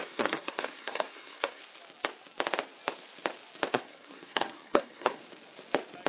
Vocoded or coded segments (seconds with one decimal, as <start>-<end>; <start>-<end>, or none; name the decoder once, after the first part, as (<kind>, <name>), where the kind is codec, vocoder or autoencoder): 0.0-1.6 (codec, SNAC); 3.7-5.2